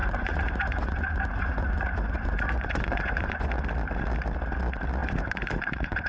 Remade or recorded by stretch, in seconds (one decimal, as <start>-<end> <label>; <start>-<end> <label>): 0.0-3.5 remade; 3.5-5.0 recorded; 5.0-6.1 remade